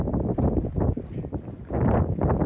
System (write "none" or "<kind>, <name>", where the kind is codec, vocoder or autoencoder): none